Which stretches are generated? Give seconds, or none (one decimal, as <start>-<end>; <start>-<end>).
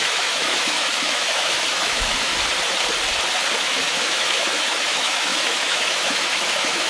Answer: 0.0-2.3; 3.6-6.9